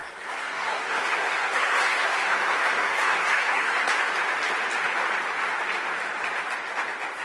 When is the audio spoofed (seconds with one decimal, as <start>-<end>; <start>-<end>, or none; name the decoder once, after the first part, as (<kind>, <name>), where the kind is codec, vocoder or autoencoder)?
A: 0.0-3.9 (codec, SNAC)